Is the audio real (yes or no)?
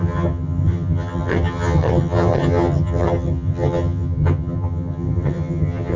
no